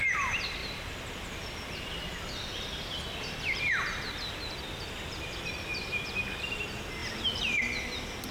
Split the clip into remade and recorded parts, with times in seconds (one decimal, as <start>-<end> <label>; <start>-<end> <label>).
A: 0.0-0.6 recorded; 0.6-3.8 remade; 3.8-8.3 recorded